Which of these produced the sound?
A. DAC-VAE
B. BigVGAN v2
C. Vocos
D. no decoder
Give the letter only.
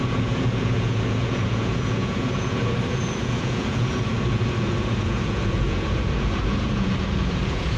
C